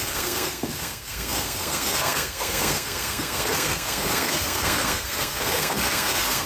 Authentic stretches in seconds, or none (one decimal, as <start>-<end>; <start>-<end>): none